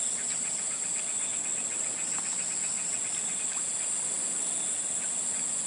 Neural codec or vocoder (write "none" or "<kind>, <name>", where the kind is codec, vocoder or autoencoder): none